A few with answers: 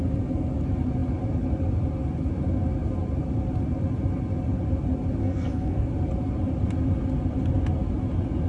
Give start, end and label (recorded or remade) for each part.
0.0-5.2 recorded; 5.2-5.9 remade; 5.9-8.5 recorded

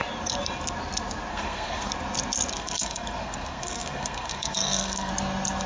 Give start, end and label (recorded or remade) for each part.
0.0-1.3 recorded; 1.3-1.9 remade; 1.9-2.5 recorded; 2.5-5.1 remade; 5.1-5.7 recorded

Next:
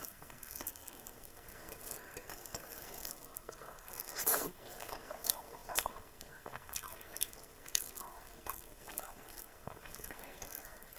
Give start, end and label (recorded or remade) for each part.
0.0-11.0 remade

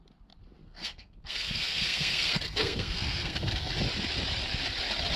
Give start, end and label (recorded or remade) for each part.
0.0-0.6 recorded; 0.6-3.7 remade; 3.7-5.2 recorded

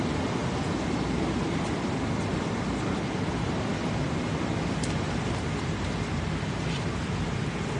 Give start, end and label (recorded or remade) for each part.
0.0-7.8 recorded

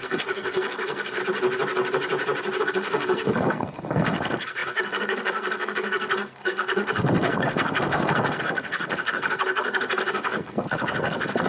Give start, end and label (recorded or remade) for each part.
0.0-1.2 remade; 1.2-2.6 recorded; 2.6-11.5 remade